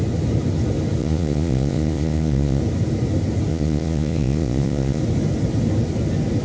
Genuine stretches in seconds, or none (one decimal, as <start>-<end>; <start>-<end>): 0.0-1.0; 2.6-3.5; 5.0-6.4